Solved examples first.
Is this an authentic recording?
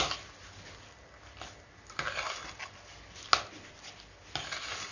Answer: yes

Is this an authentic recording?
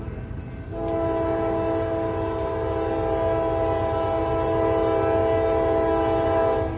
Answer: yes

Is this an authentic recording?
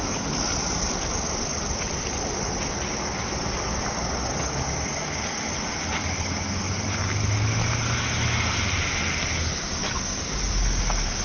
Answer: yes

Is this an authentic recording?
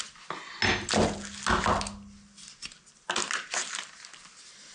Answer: yes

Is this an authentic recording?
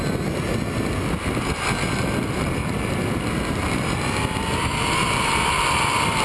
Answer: yes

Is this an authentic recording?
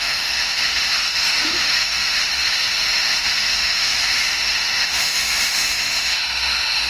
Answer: no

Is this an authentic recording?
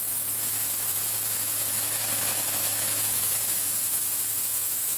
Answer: no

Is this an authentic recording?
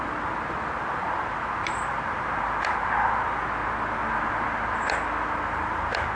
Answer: yes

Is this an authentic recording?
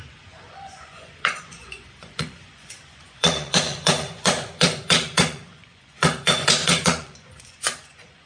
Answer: no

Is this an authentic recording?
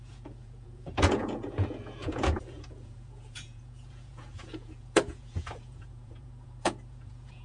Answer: no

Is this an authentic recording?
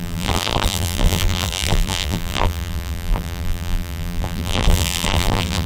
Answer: no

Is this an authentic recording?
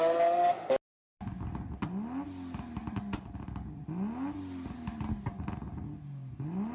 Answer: yes